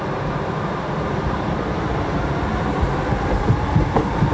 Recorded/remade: remade